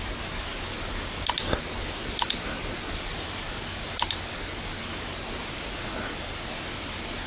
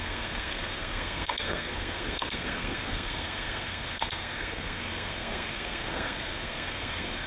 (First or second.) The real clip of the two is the first